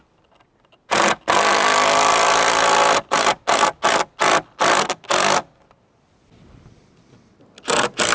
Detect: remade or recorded recorded